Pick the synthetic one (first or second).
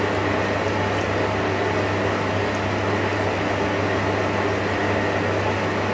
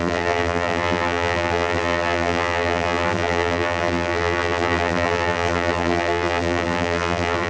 second